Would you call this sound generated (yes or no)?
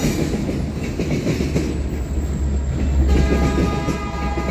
no